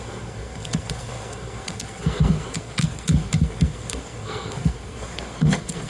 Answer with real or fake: fake